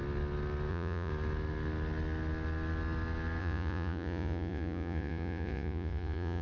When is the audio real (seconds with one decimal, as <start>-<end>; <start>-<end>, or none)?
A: 0.0-0.7; 1.1-3.4